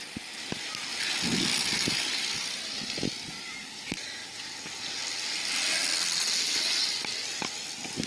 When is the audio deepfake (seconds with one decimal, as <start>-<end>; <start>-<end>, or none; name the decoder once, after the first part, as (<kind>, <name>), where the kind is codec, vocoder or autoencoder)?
none